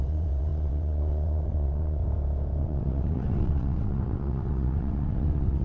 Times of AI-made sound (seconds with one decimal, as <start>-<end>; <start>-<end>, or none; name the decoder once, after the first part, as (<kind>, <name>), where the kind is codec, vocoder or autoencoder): 0.0-2.0 (vocoder, WaveNeXt); 2.6-5.6